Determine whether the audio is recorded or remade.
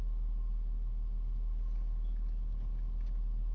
recorded